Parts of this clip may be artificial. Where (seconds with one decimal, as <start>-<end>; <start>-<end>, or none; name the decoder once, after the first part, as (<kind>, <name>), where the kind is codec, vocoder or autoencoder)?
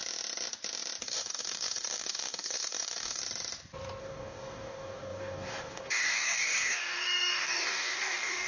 1.0-3.2 (codec, DAC); 4.0-8.5